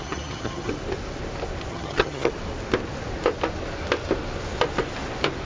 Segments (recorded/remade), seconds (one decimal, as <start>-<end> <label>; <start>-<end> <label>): 0.0-0.7 remade; 0.7-1.7 recorded; 1.7-2.3 remade; 2.3-5.4 recorded

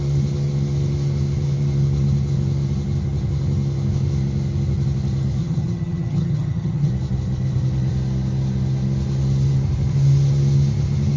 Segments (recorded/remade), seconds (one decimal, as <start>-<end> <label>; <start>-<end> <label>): 0.0-5.4 recorded; 5.4-6.9 remade; 6.9-11.2 recorded

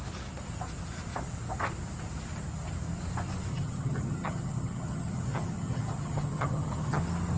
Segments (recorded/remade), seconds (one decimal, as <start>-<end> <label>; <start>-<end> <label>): 0.0-3.5 recorded; 3.5-7.0 remade; 7.0-7.4 recorded

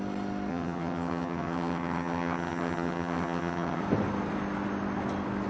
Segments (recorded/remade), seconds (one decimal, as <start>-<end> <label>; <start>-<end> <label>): 0.0-0.5 recorded; 0.5-3.8 remade; 3.8-5.5 recorded

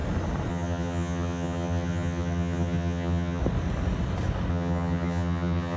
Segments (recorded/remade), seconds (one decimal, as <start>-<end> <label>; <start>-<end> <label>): 0.0-0.5 recorded; 0.5-3.4 remade; 3.4-4.5 recorded; 4.5-5.8 remade

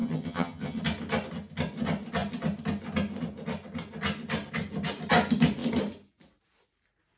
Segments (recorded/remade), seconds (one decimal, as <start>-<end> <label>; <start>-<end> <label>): 0.0-0.8 remade; 0.8-7.2 recorded